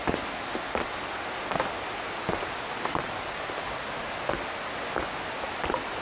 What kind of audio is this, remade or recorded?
recorded